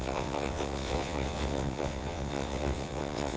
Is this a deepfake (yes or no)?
yes